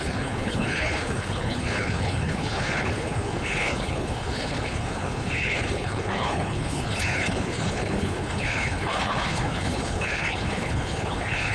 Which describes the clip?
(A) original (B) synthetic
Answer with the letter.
B